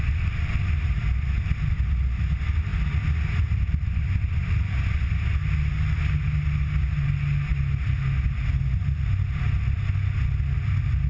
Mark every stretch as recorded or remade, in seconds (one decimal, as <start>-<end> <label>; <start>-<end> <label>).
0.0-11.1 recorded